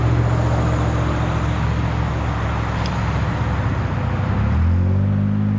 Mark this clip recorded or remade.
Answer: recorded